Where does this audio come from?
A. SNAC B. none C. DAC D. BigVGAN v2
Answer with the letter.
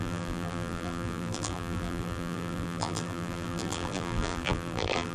D